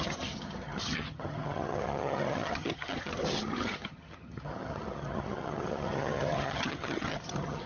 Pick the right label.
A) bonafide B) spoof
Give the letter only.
B